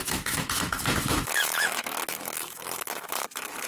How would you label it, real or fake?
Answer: fake